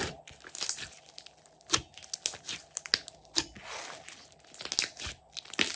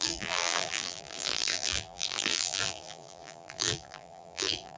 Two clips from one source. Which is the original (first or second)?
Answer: first